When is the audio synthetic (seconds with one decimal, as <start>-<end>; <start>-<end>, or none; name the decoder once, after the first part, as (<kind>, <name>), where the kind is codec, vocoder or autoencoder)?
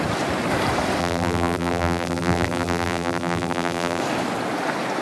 1.0-4.0 (vocoder, BigVGAN v2)